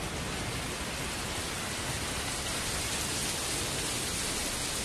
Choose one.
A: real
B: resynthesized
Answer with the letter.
A